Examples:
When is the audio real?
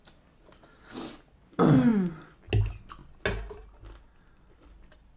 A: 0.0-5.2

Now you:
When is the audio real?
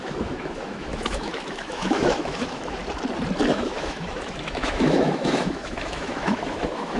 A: 2.8-3.5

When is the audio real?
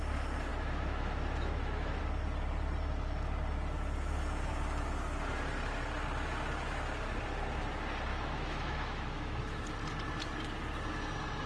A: 0.0-0.5; 2.0-8.1; 9.6-11.5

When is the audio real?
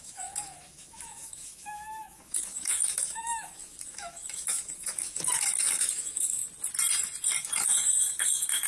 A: 6.4-7.4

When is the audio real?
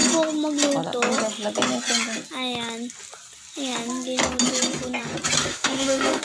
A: 0.0-5.5